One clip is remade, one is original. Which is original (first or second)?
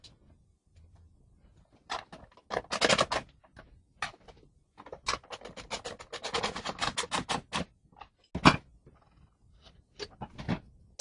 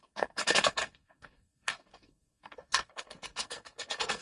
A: first